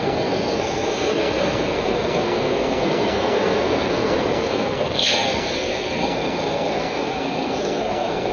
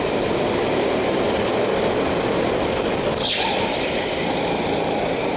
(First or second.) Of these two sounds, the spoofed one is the first